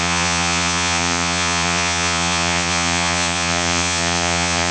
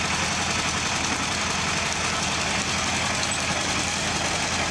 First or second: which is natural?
second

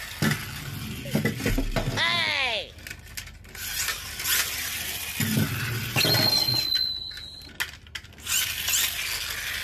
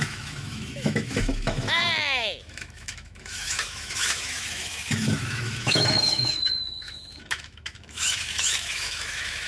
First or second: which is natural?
first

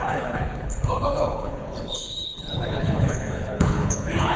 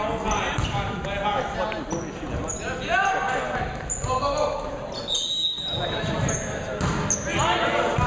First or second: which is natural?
second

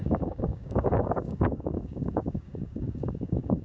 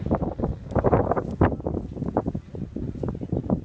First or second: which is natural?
second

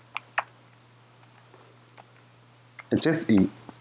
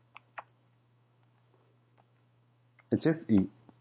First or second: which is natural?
first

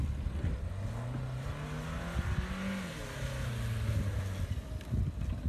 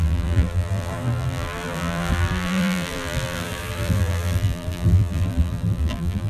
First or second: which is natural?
first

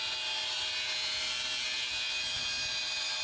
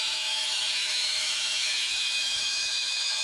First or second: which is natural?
first